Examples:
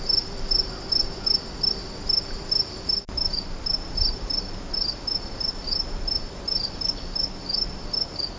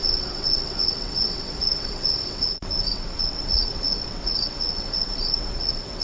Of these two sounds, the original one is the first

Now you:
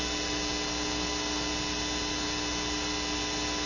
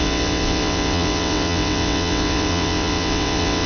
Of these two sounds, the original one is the first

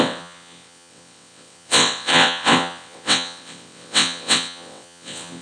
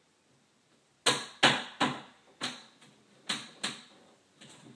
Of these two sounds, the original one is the second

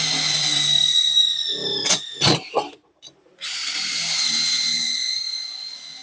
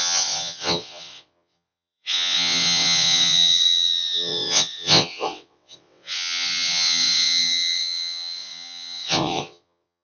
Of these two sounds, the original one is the first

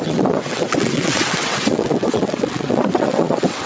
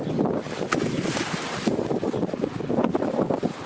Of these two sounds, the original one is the second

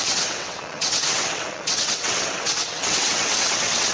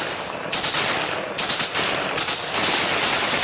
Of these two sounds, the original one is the second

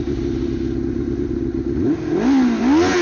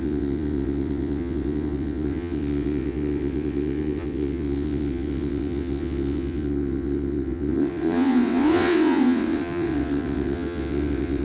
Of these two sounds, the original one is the first